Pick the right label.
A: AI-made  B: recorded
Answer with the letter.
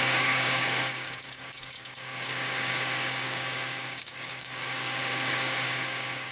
A